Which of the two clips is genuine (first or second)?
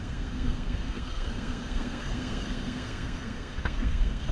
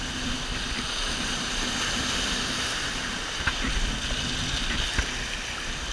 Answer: second